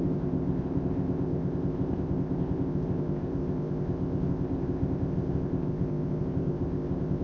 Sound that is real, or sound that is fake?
fake